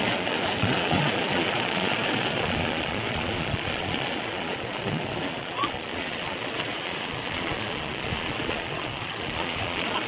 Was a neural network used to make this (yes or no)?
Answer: yes